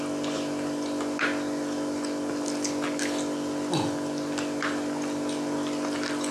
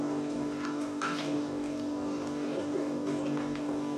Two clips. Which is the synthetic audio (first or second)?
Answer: second